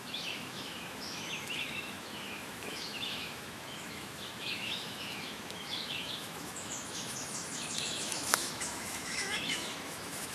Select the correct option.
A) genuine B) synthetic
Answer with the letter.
B